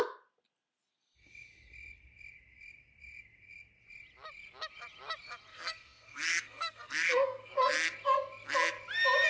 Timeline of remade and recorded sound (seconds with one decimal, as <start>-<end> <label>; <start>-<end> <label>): 0.0-5.5 recorded; 5.5-7.5 remade; 7.5-9.3 recorded